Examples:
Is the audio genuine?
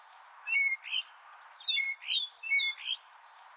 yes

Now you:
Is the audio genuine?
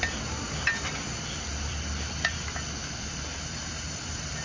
no